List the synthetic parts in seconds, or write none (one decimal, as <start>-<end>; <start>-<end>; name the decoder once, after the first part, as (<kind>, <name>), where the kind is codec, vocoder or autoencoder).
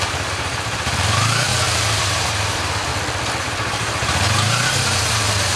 0.0-1.5 (vocoder, BigVGAN v2); 2.0-2.9; 3.4-5.6